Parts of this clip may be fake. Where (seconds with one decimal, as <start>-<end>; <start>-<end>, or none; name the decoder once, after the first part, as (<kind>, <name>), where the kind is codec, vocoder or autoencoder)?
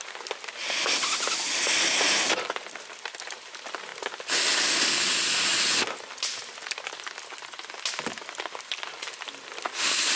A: none